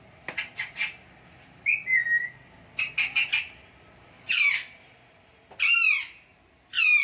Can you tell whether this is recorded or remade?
recorded